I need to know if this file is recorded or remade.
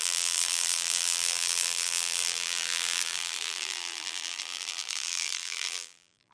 remade